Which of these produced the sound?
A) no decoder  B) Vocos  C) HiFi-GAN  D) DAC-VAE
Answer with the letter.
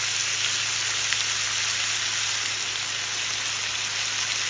A